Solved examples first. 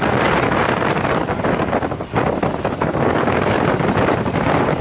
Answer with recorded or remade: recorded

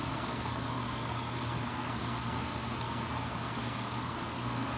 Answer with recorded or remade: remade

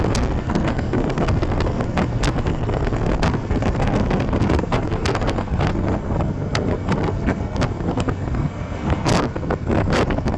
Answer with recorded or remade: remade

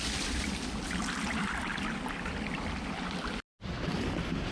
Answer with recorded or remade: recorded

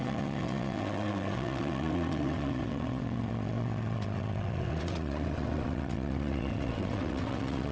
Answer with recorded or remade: remade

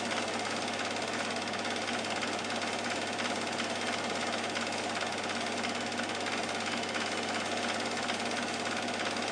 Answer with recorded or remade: recorded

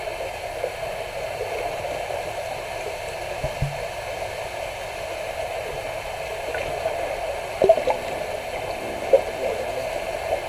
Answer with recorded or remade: recorded